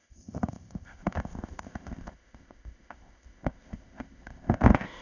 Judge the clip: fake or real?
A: fake